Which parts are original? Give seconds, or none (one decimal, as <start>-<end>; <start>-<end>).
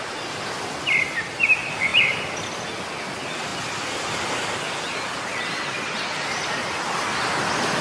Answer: 0.0-7.8